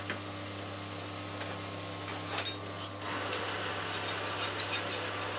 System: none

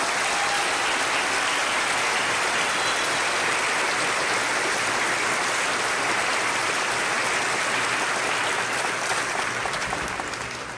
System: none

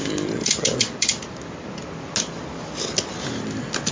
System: none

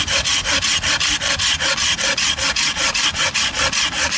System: none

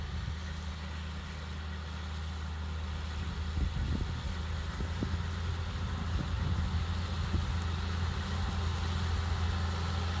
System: none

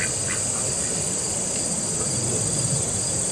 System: none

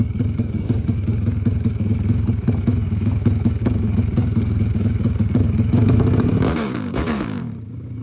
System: codec, DAC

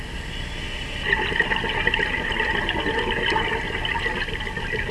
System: none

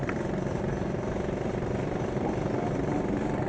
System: none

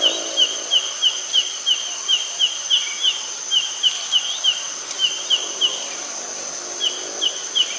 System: none